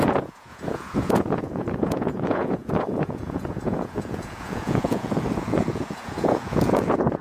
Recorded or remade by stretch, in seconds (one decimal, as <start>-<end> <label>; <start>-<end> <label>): 0.0-7.2 remade